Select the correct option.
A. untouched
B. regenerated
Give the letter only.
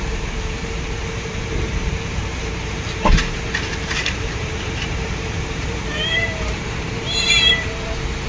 B